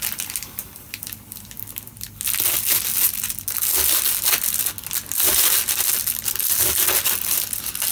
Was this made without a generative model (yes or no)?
yes